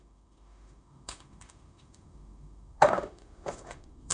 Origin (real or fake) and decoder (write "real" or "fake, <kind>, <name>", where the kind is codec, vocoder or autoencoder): fake, autoencoder, DAC-VAE